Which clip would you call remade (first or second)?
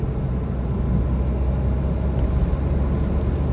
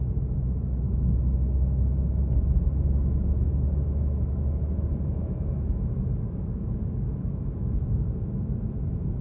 second